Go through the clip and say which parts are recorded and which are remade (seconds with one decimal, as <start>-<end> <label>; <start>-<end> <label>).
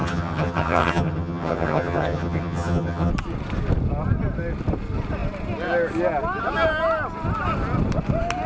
0.0-3.1 remade; 3.1-8.5 recorded